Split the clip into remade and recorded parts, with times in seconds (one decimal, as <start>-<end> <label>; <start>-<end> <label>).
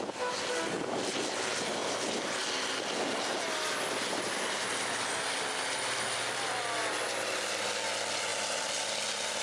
0.0-9.4 recorded